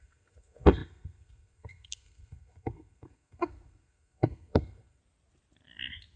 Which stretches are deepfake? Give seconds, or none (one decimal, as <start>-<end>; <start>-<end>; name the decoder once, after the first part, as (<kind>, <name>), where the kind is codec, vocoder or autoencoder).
0.0-5.0 (codec, SNAC)